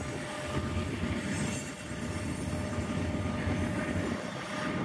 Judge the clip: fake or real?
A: real